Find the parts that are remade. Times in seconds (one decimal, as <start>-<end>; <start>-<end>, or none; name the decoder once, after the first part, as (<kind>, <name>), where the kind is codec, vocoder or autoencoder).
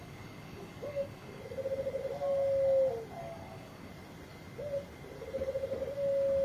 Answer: 0.0-1.4 (codec, DAC); 3.2-3.9